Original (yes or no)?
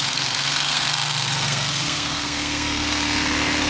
no